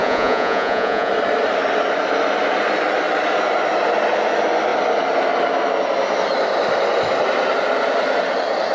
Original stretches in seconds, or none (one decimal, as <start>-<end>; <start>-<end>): 1.1-8.7